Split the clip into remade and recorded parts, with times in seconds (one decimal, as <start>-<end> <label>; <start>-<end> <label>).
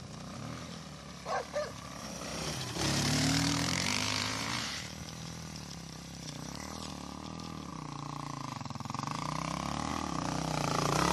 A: 0.0-2.3 recorded; 2.3-6.9 remade; 6.9-11.1 recorded